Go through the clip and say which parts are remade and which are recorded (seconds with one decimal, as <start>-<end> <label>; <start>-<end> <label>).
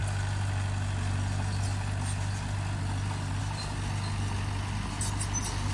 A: 0.0-5.7 recorded